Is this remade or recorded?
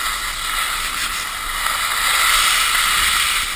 recorded